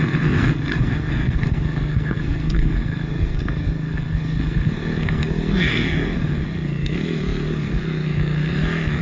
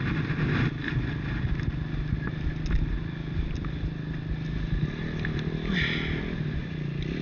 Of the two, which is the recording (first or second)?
second